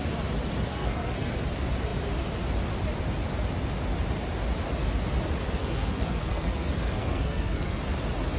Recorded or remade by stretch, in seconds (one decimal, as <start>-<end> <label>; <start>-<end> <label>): 0.0-0.7 recorded; 0.7-1.3 remade; 1.3-5.6 recorded; 5.6-7.8 remade; 7.8-8.4 recorded